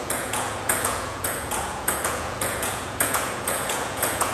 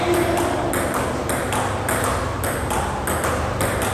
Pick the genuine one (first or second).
second